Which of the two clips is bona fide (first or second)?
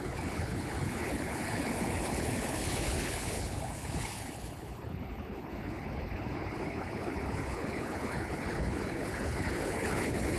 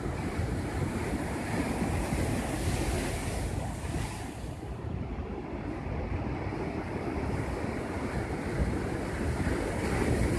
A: second